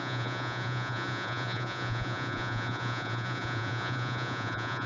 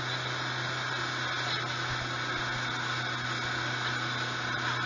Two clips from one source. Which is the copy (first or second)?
first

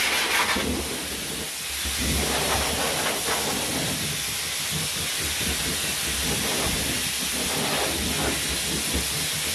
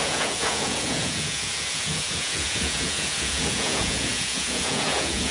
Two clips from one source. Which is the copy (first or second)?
second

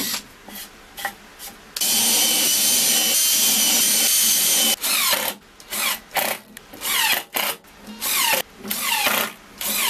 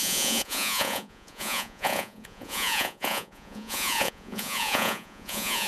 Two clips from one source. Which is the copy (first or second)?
second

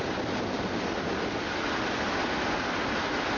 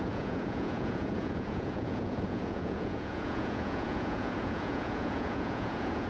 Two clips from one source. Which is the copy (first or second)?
second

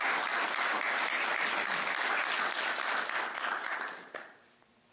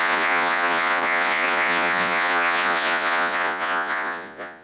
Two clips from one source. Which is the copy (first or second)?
second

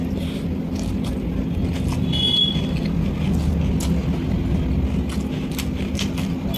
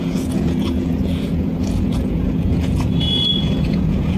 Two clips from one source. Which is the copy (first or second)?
second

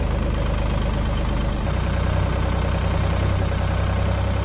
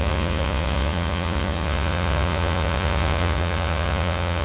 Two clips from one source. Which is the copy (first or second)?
second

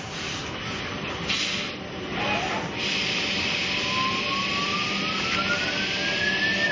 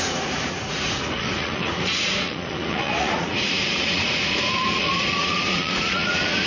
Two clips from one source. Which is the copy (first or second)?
second